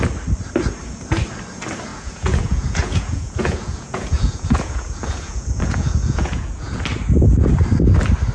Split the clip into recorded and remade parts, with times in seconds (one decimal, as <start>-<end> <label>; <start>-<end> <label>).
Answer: 0.0-1.9 recorded; 1.9-6.8 remade; 6.8-8.3 recorded